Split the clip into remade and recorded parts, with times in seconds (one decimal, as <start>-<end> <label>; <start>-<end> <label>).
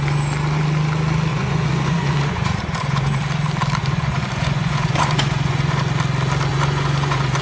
0.0-1.3 recorded; 1.3-3.2 remade; 3.2-3.8 recorded; 3.8-5.8 remade; 5.8-6.5 recorded; 6.5-7.4 remade